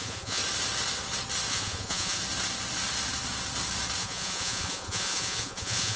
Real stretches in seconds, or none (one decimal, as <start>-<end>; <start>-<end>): 0.4-1.5; 2.2-4.0